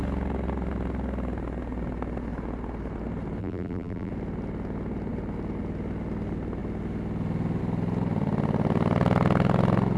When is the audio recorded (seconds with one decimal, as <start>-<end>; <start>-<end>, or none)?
0.0-3.4; 4.1-10.0